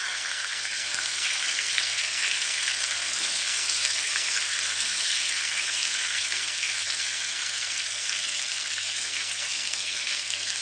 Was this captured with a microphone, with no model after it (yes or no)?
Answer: no